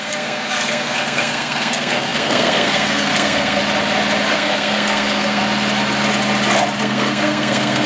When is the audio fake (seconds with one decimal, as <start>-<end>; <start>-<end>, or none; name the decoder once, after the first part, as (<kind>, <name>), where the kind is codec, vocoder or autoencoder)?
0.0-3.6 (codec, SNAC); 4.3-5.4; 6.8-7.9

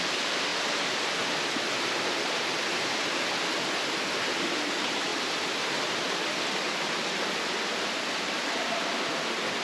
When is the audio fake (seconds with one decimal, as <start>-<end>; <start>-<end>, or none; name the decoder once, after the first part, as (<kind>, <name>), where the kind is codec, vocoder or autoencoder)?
none

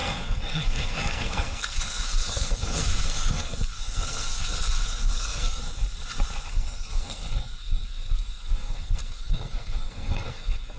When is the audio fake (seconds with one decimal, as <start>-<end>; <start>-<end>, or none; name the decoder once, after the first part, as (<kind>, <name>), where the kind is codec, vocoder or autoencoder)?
0.0-5.6 (codec, SNAC); 6.5-10.8

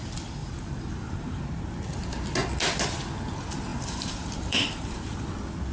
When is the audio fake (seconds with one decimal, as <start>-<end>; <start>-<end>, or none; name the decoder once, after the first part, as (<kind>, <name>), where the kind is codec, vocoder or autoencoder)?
0.4-1.4 (vocoder, BigVGAN v2); 3.7-5.3

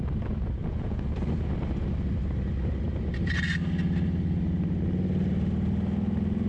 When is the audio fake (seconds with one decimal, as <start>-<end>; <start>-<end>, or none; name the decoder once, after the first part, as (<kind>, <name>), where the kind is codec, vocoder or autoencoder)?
0.6-1.1 (vocoder, Vocos)

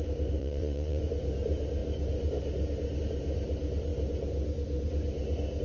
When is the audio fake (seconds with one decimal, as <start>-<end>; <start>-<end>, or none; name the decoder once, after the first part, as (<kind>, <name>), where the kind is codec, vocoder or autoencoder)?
0.4-1.0 (vocoder, WaveNeXt)